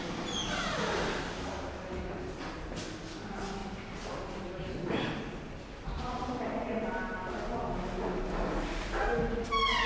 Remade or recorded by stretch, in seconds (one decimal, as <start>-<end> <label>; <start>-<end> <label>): 0.0-3.6 recorded; 3.6-7.3 remade; 7.3-9.9 recorded